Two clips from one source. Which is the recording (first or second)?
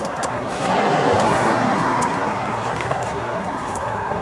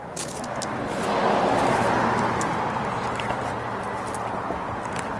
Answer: second